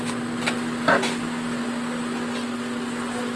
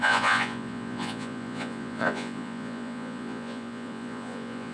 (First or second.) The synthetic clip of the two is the second